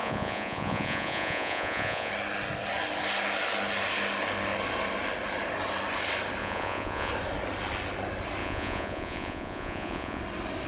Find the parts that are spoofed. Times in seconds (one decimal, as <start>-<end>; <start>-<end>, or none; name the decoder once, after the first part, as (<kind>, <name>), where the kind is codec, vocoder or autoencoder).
0.0-2.1 (vocoder, Vocos); 6.4-7.1; 8.4-10.2